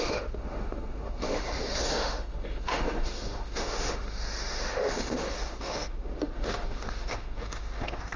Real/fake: fake